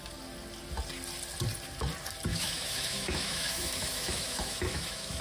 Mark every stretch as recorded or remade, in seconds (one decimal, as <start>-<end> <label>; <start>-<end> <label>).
0.0-2.3 recorded; 2.3-5.2 remade